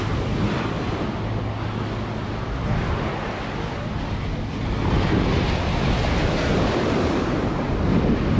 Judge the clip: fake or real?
real